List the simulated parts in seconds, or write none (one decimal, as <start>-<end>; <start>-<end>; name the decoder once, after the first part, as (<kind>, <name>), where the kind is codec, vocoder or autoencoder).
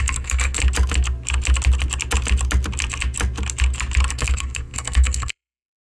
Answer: 0.0-0.6 (codec, SNAC); 4.1-5.9